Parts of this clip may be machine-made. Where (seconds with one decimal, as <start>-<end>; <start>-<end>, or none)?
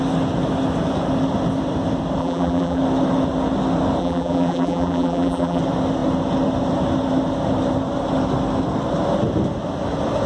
2.2-2.8; 4.0-5.6